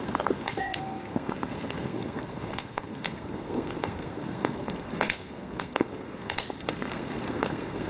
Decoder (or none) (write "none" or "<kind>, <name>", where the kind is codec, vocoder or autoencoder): codec, SNAC